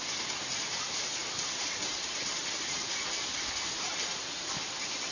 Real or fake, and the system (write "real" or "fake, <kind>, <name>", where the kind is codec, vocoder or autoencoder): real